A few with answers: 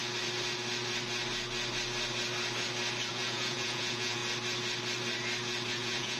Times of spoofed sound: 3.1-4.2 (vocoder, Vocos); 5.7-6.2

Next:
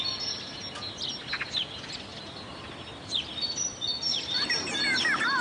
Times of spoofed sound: none